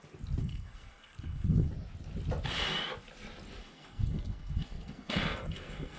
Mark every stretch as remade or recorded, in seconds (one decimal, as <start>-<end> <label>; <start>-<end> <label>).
0.0-0.4 recorded; 0.4-1.7 remade; 1.7-3.6 recorded; 3.6-6.0 remade